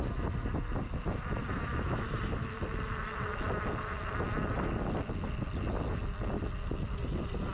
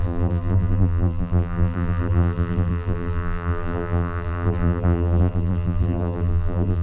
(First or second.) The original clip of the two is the first